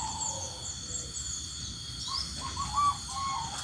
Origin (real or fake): real